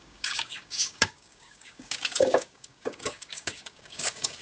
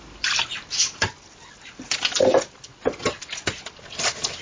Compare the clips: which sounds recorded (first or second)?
second